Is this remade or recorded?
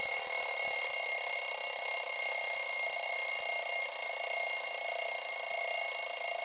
recorded